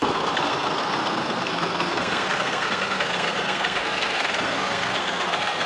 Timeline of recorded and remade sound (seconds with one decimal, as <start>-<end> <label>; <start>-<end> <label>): 0.0-5.7 remade